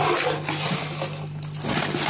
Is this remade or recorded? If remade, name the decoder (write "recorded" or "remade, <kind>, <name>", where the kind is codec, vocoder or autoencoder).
recorded